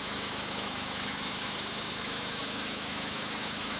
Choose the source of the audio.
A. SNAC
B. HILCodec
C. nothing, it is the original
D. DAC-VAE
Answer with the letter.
D